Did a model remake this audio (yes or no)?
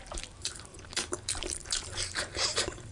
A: yes